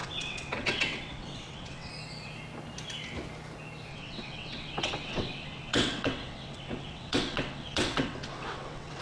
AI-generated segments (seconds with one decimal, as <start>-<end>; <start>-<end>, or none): 0.0-1.9; 3.9-9.0